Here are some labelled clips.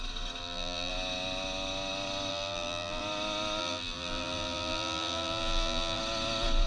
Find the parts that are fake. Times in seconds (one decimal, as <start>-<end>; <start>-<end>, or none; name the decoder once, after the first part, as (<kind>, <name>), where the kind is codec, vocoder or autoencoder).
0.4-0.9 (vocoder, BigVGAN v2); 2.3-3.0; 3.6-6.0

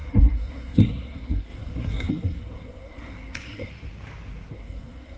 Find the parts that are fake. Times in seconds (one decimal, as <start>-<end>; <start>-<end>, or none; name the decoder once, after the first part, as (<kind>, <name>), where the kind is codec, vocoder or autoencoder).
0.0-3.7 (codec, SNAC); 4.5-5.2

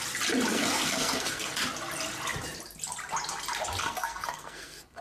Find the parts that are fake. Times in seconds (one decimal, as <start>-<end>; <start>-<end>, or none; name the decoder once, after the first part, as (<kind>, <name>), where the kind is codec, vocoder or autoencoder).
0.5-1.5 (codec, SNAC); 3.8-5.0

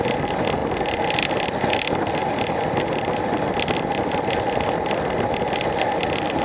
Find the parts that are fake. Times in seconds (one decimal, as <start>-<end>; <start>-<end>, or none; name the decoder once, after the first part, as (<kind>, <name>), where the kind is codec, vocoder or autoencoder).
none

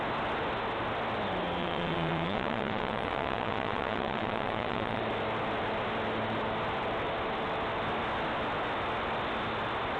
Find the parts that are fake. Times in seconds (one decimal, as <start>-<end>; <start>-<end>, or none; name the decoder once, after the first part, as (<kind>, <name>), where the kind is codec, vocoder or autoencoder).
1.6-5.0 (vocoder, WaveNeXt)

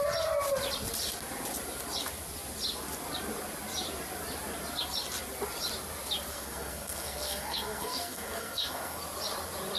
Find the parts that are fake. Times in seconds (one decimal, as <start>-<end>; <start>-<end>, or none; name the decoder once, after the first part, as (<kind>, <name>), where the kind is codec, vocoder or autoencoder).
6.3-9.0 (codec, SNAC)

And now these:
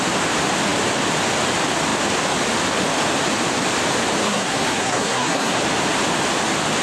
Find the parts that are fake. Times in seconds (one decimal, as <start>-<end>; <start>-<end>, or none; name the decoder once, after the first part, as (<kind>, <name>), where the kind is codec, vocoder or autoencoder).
4.2-5.6 (codec, SNAC)